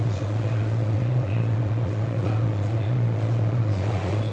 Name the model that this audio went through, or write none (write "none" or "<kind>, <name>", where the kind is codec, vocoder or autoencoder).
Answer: vocoder, Vocos